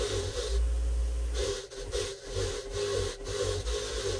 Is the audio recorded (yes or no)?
yes